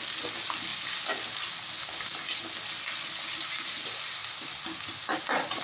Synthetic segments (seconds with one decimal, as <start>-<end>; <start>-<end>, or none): none

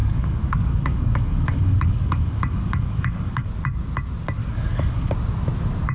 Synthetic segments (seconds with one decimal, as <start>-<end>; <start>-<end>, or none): 0.0-3.5; 4.4-5.1